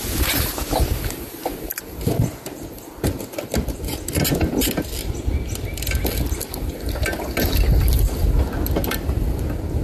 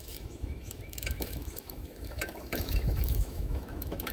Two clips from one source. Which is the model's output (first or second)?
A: second